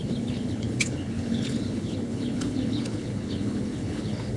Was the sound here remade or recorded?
remade